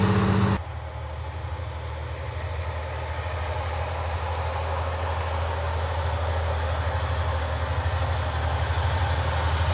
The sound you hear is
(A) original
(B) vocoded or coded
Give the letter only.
A